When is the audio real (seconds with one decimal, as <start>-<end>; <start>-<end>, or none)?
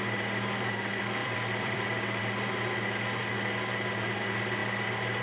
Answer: 0.0-1.2; 2.2-4.6